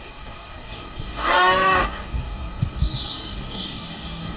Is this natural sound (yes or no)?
no